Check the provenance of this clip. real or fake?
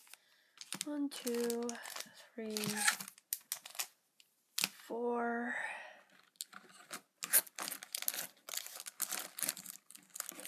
real